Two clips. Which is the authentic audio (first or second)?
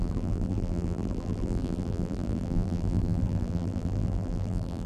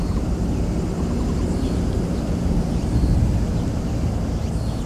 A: second